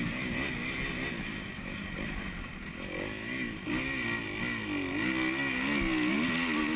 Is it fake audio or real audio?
real